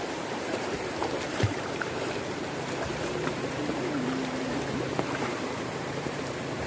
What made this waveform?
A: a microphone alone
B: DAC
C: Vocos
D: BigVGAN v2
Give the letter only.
D